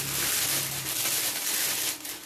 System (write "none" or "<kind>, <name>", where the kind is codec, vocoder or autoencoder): none